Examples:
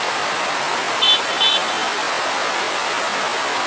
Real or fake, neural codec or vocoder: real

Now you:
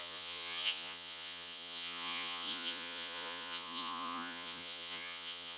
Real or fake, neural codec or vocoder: fake, vocoder, Vocos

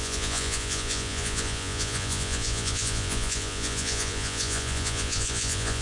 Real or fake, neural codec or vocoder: fake, vocoder, Vocos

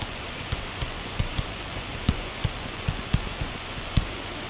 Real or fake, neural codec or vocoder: fake, vocoder, Vocos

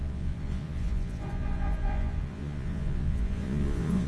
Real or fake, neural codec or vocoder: fake, vocoder, Vocos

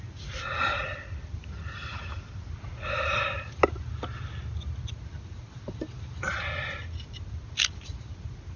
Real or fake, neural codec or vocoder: real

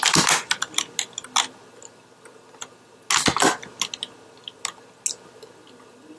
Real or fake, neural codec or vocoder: real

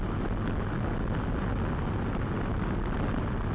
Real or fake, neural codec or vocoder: real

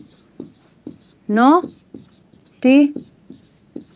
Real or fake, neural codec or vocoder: fake, vocoder, Vocos